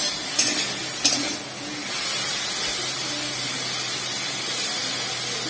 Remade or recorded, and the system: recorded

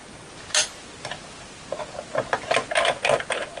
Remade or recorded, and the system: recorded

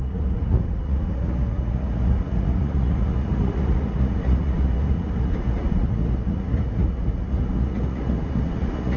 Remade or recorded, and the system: remade, vocoder, Vocos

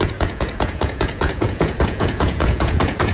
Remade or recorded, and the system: remade, vocoder, Vocos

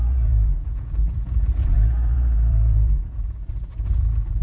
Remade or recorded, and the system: remade, vocoder, Vocos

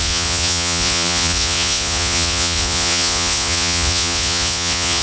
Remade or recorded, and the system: remade, vocoder, Vocos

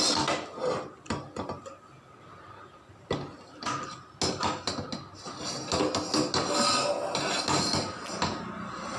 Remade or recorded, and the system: recorded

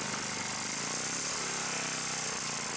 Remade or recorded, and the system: recorded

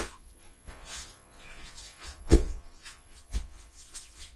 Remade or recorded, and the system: remade, vocoder, Vocos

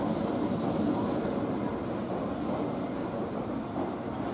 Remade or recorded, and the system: recorded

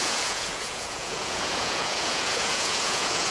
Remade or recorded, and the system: remade, vocoder, Vocos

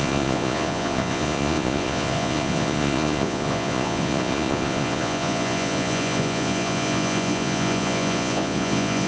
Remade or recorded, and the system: remade, vocoder, Vocos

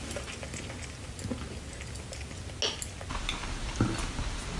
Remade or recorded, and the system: recorded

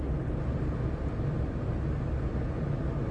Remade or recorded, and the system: recorded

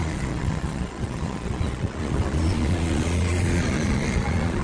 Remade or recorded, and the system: remade, vocoder, Vocos